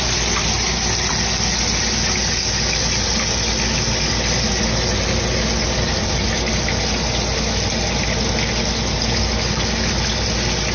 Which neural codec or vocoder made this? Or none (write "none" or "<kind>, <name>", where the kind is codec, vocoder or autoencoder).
none